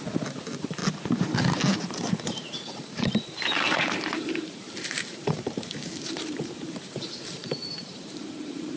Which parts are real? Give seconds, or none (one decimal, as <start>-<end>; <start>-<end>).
0.8-1.8

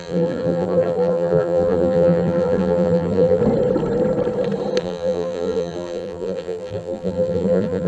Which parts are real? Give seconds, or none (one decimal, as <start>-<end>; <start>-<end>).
3.4-4.8

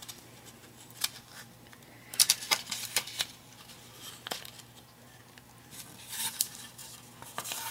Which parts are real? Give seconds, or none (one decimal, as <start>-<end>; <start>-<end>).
6.8-7.7

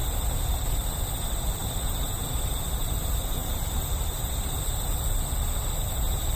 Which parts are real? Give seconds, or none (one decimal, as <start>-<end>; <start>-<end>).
0.0-1.6; 2.5-3.4; 4.9-6.3

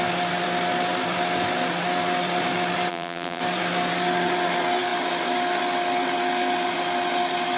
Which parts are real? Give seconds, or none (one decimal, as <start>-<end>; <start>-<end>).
0.0-2.9; 3.4-7.6

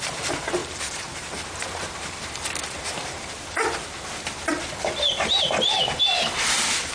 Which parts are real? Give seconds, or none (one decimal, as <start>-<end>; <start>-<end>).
none

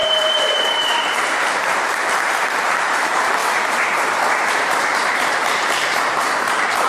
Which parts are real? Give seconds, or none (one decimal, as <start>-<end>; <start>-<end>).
none

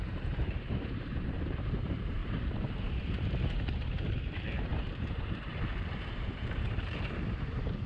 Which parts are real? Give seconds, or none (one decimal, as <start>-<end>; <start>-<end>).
none